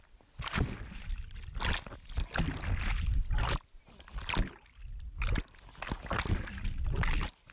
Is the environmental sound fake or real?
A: real